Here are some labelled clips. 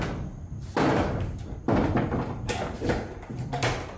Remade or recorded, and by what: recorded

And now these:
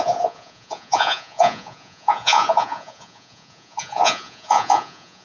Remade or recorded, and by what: remade, vocoder, Vocos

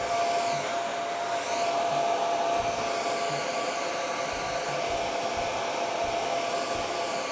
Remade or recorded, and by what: recorded